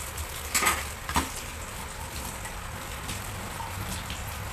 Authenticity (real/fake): real